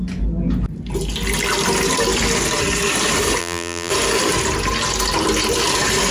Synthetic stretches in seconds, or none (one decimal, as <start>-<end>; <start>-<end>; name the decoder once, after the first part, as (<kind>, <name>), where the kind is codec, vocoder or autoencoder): 3.4-3.9 (vocoder, BigVGAN v2)